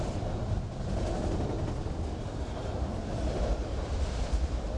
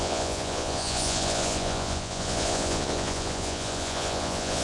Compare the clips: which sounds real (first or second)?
first